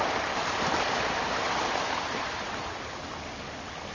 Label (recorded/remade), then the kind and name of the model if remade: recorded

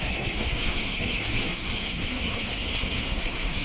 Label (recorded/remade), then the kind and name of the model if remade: remade, codec, SNAC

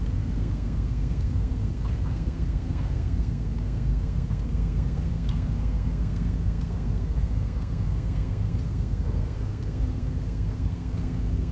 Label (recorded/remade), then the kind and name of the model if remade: remade, codec, SNAC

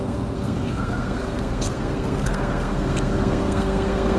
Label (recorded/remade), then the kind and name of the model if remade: remade, codec, SNAC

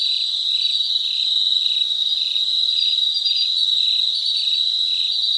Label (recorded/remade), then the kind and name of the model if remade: recorded